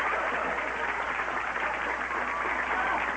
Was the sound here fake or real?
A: real